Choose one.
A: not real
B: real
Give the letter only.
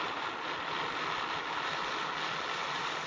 B